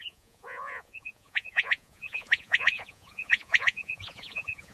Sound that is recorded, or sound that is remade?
remade